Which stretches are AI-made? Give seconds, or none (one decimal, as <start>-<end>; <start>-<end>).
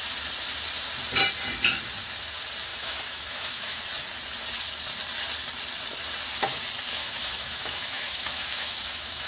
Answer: 2.7-3.8; 7.0-9.3